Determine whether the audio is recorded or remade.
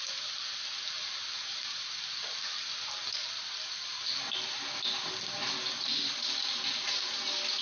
recorded